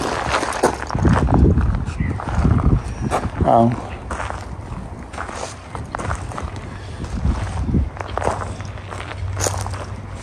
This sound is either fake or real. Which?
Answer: real